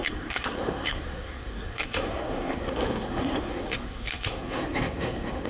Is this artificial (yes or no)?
yes